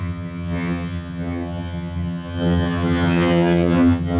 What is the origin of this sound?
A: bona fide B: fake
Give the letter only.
B